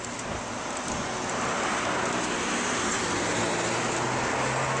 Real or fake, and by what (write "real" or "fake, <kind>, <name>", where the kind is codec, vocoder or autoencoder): real